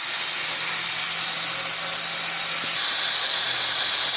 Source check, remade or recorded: recorded